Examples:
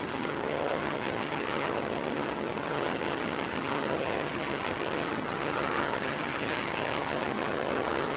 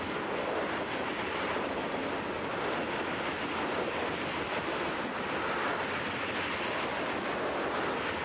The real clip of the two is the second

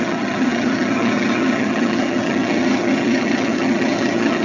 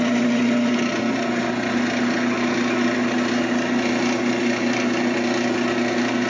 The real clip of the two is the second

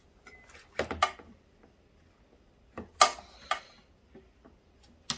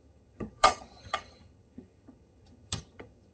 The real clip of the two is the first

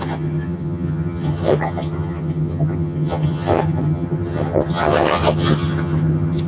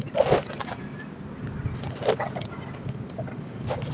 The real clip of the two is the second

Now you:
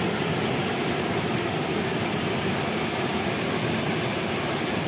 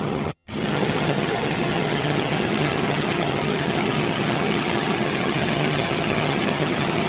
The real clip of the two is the first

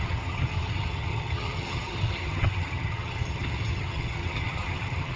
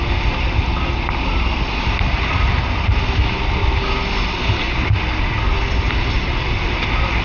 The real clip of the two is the second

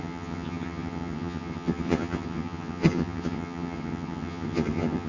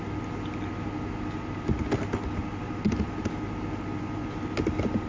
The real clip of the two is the second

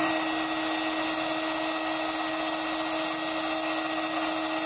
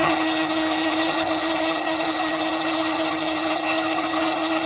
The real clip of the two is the first